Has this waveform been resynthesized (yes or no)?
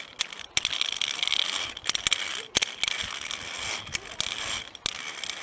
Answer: no